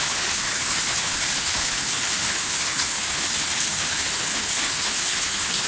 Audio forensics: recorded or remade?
remade